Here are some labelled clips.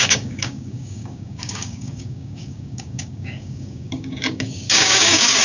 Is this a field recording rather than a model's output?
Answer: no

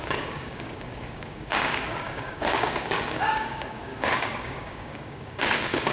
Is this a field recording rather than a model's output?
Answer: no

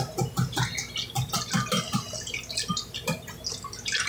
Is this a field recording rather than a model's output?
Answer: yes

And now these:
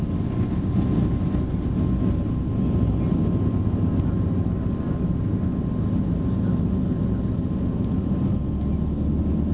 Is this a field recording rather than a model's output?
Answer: yes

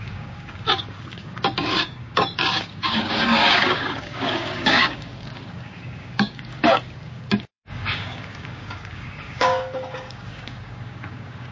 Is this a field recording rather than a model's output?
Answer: no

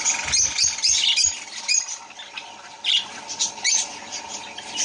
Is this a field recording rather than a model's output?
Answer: yes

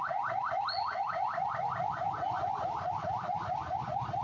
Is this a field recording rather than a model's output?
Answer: yes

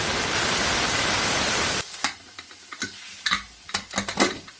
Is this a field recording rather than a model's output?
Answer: yes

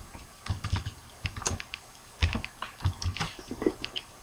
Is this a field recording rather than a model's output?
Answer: no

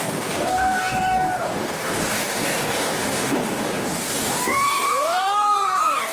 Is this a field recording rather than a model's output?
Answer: no